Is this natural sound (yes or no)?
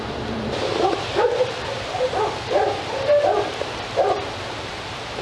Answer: no